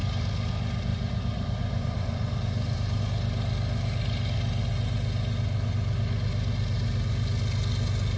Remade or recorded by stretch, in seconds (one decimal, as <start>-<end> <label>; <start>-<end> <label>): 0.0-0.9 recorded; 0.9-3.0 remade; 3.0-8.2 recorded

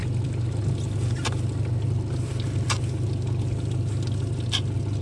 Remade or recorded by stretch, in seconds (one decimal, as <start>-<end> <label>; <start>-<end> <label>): 0.0-5.0 recorded

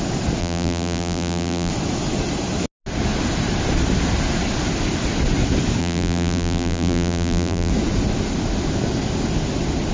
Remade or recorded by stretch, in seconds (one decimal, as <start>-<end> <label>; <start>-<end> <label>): 0.0-0.4 recorded; 0.4-1.7 remade; 1.7-5.8 recorded; 5.8-7.7 remade; 7.7-9.9 recorded

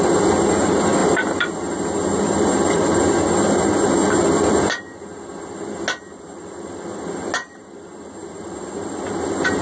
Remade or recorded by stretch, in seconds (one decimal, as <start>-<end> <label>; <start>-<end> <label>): 0.0-9.6 recorded

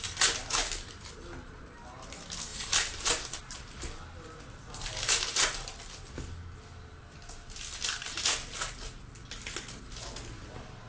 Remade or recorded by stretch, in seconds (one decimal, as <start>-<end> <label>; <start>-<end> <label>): 0.0-2.5 recorded; 2.5-3.4 remade; 3.4-10.9 recorded